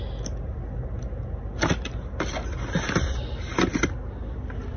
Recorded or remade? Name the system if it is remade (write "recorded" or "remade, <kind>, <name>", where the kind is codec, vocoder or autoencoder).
recorded